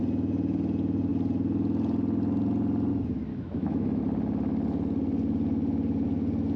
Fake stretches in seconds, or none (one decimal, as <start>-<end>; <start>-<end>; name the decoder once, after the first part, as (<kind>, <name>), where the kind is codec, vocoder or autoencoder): 3.3-4.0 (autoencoder, DAC-VAE)